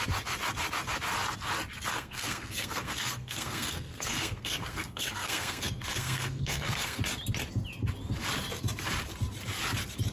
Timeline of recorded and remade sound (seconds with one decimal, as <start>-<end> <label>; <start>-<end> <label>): 0.0-1.9 recorded; 1.9-7.0 remade; 7.0-10.1 recorded